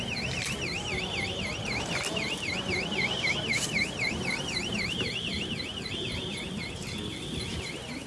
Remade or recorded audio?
remade